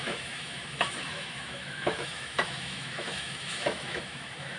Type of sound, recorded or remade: remade